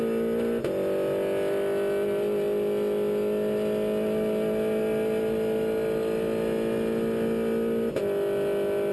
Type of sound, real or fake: real